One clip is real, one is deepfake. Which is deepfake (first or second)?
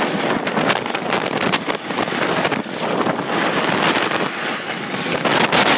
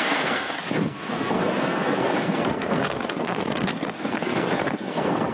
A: second